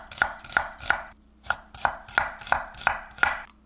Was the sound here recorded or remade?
recorded